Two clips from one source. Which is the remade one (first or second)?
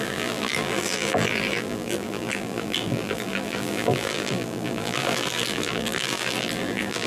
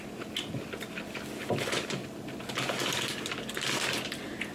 first